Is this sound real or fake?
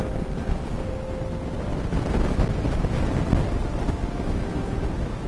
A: real